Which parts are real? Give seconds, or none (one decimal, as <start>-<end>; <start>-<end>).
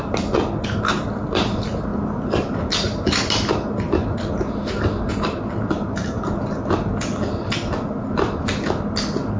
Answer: 0.0-9.4